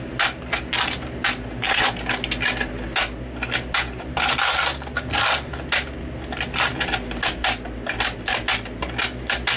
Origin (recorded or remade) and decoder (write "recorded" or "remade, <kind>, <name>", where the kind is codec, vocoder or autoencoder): recorded